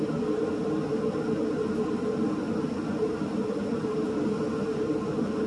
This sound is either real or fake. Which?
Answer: real